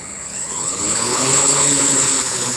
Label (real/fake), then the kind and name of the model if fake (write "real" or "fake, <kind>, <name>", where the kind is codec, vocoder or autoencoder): fake, codec, HILCodec